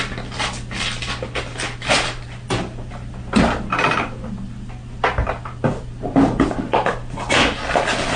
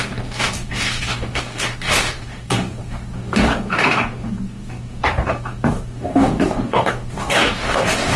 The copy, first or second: second